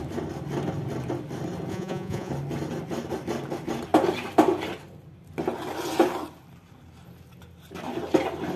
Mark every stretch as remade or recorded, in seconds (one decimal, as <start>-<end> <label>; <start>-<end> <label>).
0.0-1.7 recorded; 1.7-2.3 remade; 2.3-8.6 recorded